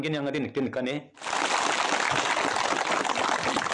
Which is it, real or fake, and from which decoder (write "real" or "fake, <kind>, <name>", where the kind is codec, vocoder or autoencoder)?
real